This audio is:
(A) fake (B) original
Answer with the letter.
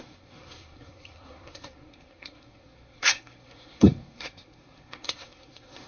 A